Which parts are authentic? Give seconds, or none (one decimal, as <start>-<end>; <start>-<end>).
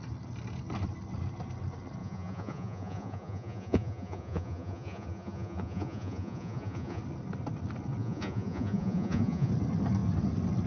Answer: 0.0-2.0; 7.0-8.0; 9.5-10.7